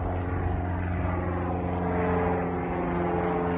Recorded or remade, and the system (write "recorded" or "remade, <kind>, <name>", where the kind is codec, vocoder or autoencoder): recorded